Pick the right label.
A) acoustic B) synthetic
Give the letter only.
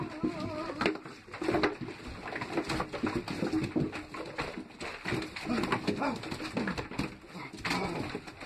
A